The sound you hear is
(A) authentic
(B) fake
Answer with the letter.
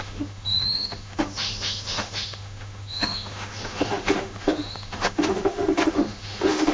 B